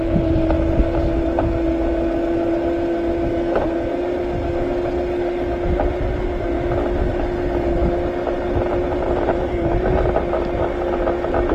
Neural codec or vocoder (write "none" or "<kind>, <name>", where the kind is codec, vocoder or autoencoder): none